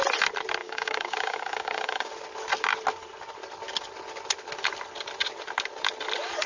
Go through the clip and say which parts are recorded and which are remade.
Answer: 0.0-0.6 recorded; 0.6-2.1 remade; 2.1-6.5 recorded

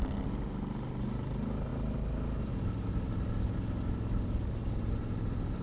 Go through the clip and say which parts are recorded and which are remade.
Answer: 0.0-5.6 recorded

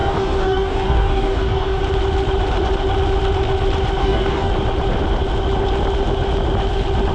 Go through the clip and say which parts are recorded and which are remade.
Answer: 0.0-1.8 remade; 1.8-4.0 recorded; 4.0-4.5 remade; 4.5-7.1 recorded

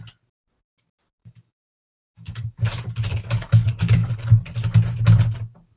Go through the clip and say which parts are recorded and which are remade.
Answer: 0.0-1.2 recorded; 1.2-2.6 remade; 2.6-3.1 recorded; 3.1-4.4 remade; 4.4-5.8 recorded